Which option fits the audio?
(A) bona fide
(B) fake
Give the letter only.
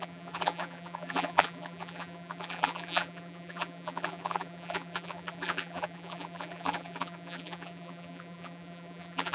B